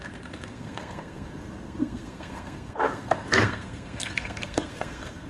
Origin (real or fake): fake